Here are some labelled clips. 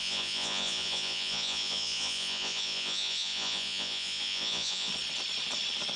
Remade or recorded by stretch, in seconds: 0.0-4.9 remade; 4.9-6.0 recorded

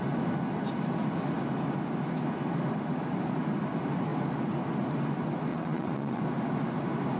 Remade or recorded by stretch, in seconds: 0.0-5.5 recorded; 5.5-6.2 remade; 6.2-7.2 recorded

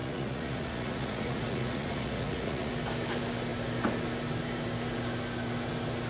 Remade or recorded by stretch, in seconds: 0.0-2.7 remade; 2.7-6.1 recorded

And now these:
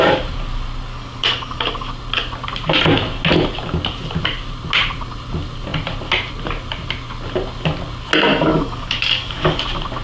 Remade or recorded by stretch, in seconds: 0.0-0.9 recorded; 0.9-1.9 remade; 1.9-8.3 recorded; 8.3-9.6 remade; 9.6-10.0 recorded

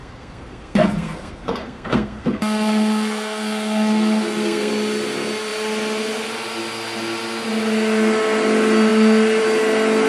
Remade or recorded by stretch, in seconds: 0.0-4.7 remade; 4.7-10.1 recorded

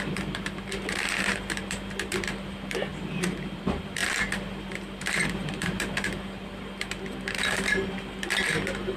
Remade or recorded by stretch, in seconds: 0.0-9.0 remade